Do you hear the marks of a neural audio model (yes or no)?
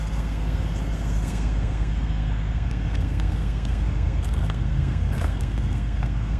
yes